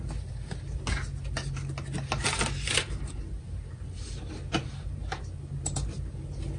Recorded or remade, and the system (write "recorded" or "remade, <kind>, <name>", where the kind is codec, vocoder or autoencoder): recorded